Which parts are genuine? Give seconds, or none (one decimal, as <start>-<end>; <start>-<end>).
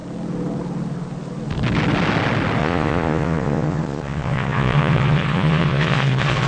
0.0-2.6